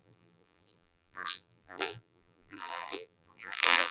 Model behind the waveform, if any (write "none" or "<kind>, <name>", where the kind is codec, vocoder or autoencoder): vocoder, BigVGAN v2